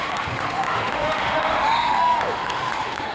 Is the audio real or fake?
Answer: fake